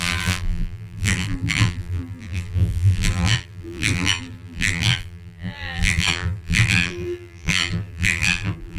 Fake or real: fake